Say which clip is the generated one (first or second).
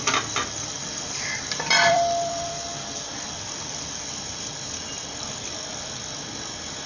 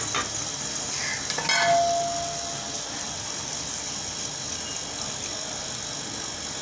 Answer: first